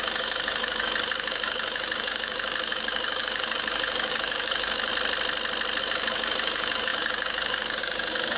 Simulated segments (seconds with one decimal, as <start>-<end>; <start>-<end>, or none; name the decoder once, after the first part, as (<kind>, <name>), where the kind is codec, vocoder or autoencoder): 0.0-4.9 (codec, DAC); 5.8-8.4